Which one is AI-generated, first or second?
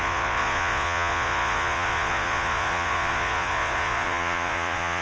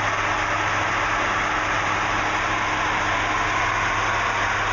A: first